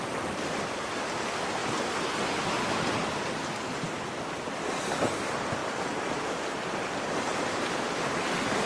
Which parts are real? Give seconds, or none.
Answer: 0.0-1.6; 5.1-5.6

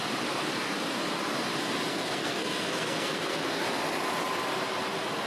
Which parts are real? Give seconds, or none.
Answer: 0.0-1.9; 3.6-5.3

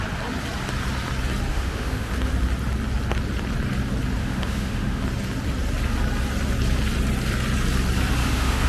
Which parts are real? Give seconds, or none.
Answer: 0.0-1.5; 2.1-4.2; 5.0-8.2

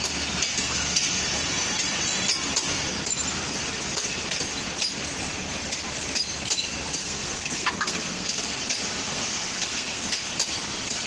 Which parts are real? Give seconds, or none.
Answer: 0.0-0.5; 1.2-7.0; 8.6-9.1; 10.3-11.1

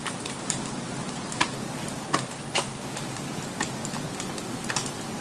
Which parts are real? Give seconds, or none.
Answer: 0.8-5.2

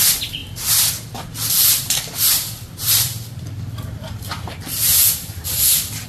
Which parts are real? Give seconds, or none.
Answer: 0.4-1.5